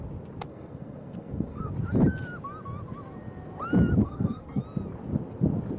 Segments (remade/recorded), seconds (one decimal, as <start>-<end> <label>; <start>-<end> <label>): 0.0-0.5 recorded; 0.5-1.7 remade; 1.7-4.0 recorded; 4.0-4.6 remade; 4.6-5.8 recorded